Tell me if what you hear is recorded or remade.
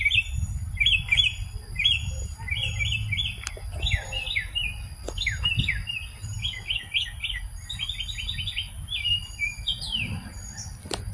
recorded